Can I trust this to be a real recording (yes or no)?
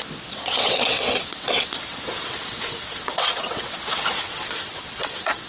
no